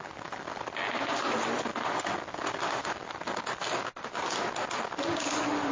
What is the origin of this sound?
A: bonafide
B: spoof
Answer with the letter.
A